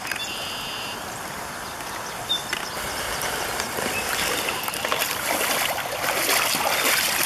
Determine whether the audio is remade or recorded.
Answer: remade